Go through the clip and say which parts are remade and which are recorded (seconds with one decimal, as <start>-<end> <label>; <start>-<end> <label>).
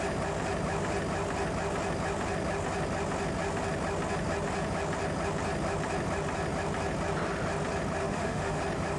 0.0-8.0 recorded; 8.0-8.6 remade; 8.6-9.0 recorded